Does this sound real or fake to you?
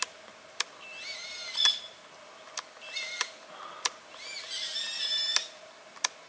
real